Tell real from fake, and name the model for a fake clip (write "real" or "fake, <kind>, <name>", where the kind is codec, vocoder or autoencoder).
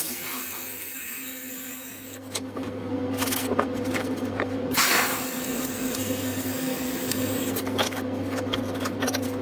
fake, codec, SNAC